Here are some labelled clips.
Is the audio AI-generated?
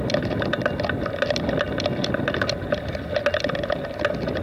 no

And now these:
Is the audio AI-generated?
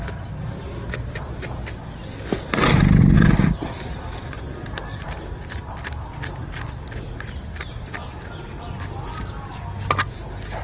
no